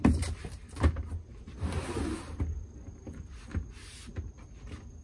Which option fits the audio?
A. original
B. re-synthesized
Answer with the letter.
A